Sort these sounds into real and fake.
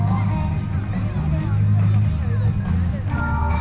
real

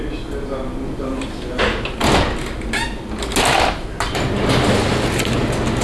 real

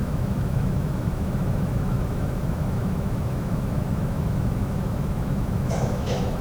fake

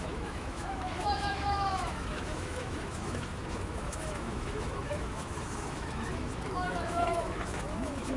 fake